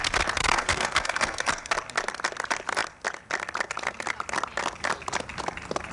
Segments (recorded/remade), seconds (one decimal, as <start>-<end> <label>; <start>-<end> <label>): 0.0-0.4 recorded; 0.4-1.7 remade; 1.7-5.9 recorded